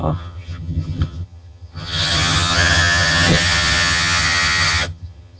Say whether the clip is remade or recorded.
remade